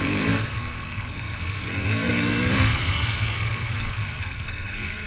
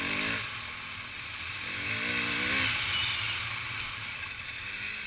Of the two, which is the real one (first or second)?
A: second